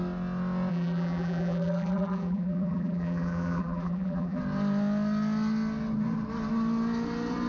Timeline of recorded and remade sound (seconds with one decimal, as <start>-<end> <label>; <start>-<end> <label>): 0.0-0.7 recorded; 0.7-4.4 remade; 4.4-7.5 recorded